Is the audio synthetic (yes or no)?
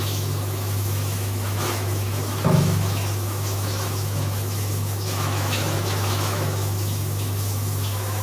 yes